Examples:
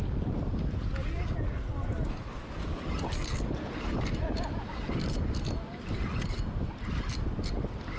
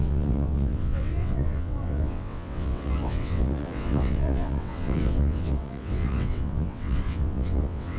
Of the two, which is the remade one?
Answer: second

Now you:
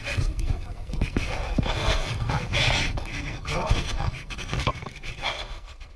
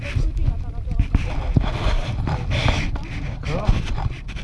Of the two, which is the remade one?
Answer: first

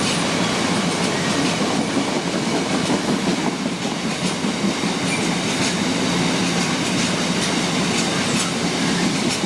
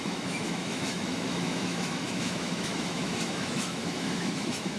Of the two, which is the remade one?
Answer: second